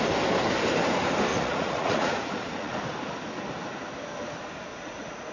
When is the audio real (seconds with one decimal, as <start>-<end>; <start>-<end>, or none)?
0.0-1.3; 2.7-4.7